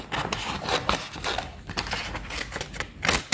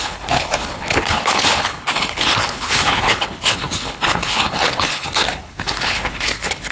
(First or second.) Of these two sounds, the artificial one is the second